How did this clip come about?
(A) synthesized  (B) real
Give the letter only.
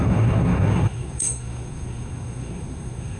A